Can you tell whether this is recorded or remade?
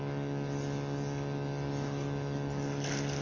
recorded